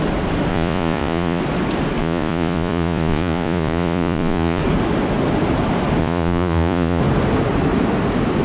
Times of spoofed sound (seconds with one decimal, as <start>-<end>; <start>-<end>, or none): 0.5-1.4; 2.0-4.6; 6.0-7.0